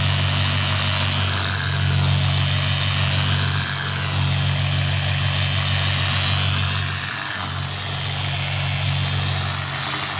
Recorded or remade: recorded